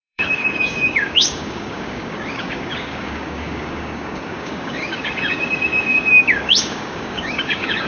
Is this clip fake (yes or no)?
yes